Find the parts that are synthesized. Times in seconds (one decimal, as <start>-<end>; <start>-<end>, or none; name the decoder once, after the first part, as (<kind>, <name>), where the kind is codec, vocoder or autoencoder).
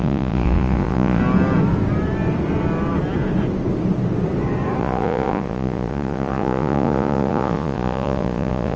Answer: 0.0-1.2 (vocoder, Vocos); 4.8-8.8